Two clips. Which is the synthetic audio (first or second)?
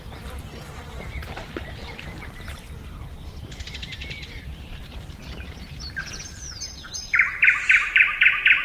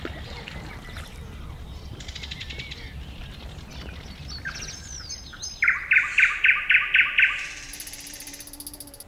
first